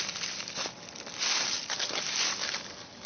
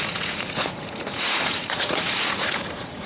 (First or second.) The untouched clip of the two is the first